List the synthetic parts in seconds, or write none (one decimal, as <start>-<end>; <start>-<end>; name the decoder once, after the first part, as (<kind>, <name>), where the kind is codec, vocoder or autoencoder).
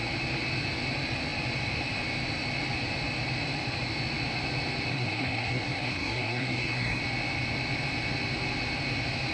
4.9-7.0 (codec, SNAC)